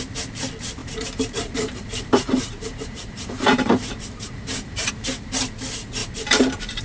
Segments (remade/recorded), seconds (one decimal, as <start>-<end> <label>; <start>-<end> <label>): 0.0-0.8 recorded; 0.8-4.9 remade; 4.9-6.0 recorded; 6.0-6.8 remade